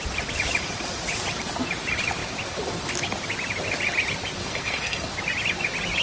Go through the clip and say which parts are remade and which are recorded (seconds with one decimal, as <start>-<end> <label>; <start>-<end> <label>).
0.0-4.4 recorded; 4.4-5.1 remade; 5.1-6.0 recorded